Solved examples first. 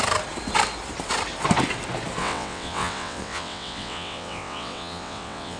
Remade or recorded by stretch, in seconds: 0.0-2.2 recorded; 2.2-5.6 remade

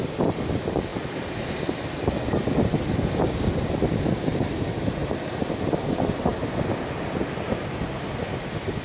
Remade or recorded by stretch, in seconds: 0.0-8.8 recorded